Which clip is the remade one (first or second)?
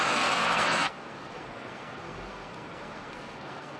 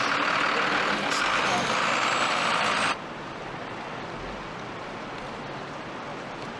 first